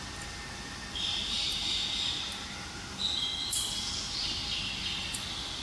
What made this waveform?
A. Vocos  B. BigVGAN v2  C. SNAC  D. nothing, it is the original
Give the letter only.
D